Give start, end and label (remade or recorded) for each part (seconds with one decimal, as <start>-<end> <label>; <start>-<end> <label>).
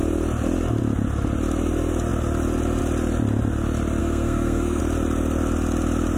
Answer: 0.0-4.0 recorded; 4.0-4.8 remade; 4.8-6.2 recorded